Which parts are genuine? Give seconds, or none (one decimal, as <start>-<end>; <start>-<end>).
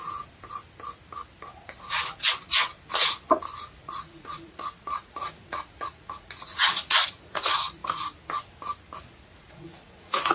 0.0-3.6; 7.8-9.1